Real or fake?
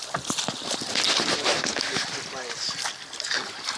real